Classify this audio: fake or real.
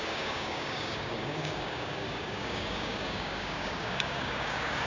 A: fake